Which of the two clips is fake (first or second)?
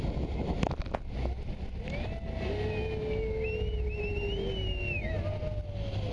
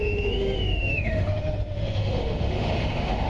second